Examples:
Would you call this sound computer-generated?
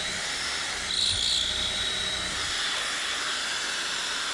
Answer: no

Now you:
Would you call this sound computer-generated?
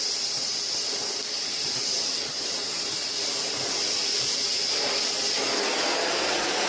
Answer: no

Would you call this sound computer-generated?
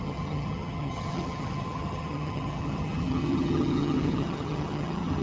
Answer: yes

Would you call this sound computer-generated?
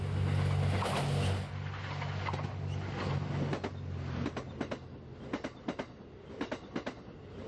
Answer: no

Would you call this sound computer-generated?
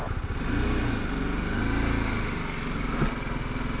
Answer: no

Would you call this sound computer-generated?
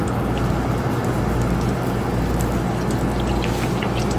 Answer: no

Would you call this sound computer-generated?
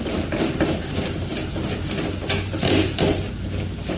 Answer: no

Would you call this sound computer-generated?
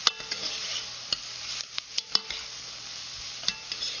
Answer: yes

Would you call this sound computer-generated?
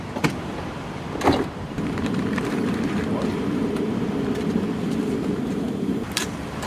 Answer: yes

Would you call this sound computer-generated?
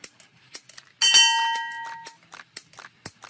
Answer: no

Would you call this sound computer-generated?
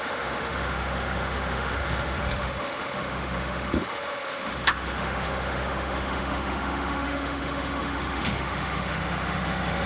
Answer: yes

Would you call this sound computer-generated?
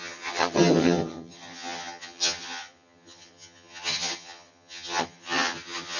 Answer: yes